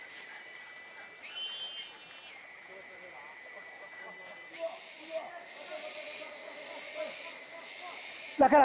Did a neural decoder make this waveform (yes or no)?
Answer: no